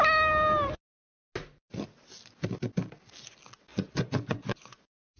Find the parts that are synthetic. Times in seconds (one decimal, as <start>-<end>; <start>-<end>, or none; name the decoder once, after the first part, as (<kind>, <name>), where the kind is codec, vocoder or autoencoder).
3.7-4.8 (vocoder, Vocos)